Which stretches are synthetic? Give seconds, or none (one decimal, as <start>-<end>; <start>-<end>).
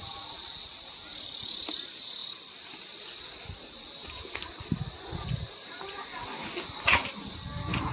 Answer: none